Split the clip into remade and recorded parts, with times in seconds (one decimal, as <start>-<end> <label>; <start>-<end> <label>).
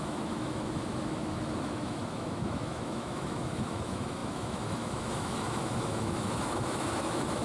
0.0-7.4 remade